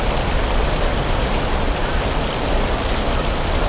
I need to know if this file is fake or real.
real